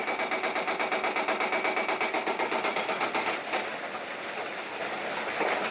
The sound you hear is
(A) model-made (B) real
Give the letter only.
B